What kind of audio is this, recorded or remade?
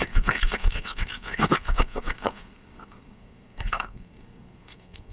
remade